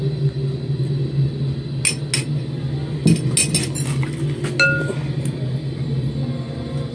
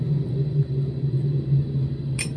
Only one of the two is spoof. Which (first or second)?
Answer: second